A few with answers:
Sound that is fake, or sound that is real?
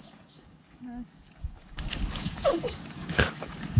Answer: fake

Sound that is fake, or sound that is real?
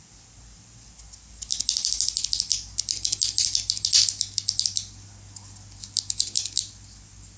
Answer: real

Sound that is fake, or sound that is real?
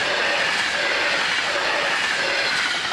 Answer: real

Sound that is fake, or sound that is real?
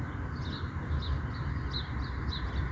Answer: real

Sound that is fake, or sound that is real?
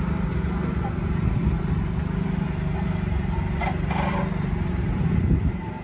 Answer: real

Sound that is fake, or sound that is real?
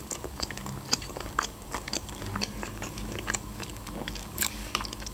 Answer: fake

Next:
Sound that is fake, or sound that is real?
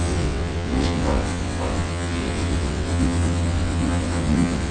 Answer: fake